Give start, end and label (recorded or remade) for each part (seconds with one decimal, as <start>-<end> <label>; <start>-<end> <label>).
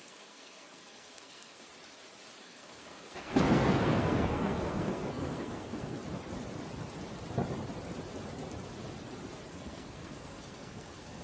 0.0-1.7 remade; 1.7-2.4 recorded; 2.4-6.0 remade; 6.0-9.5 recorded; 9.5-11.2 remade